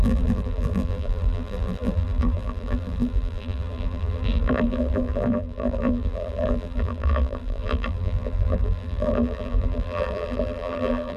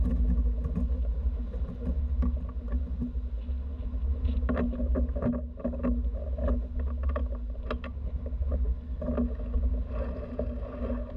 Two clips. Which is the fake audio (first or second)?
first